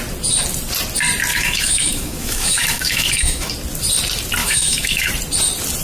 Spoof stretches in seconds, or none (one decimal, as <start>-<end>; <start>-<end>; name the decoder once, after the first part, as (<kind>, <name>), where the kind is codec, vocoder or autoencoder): 1.3-3.5 (autoencoder, DAC-VAE); 4.4-5.1